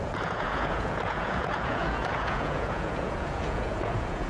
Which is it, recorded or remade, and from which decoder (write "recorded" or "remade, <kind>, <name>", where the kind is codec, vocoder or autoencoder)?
remade, vocoder, Vocos